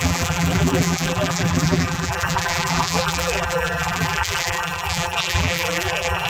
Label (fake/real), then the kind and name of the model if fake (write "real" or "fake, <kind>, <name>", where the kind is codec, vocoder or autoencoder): fake, vocoder, BigVGAN v2